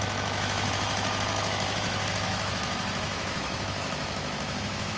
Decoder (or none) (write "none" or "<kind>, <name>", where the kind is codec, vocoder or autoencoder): autoencoder, DAC-VAE